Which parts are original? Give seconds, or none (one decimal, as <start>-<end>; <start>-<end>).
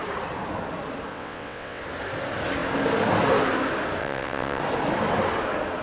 0.0-1.1; 1.8-4.0; 4.6-5.8